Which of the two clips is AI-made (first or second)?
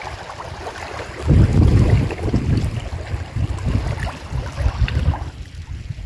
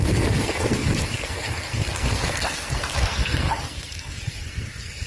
second